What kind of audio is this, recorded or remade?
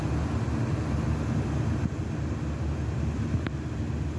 recorded